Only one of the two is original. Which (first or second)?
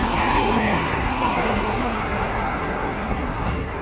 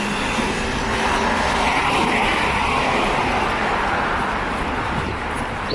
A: second